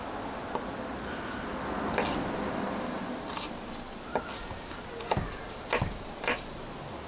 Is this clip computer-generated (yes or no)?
no